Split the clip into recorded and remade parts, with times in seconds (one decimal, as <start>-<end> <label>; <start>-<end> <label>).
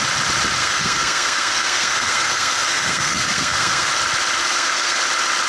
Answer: 0.0-0.6 recorded; 0.6-3.9 remade; 3.9-4.4 recorded; 4.4-5.0 remade; 5.0-5.5 recorded